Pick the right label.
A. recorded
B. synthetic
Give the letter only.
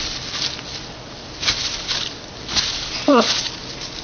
B